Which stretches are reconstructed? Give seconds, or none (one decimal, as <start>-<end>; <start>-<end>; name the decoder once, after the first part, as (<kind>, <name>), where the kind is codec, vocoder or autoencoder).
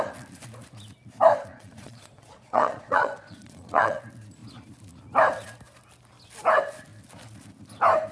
1.5-4.0 (vocoder, Vocos)